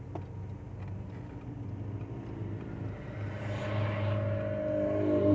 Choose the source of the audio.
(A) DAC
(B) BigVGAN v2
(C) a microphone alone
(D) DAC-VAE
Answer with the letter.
C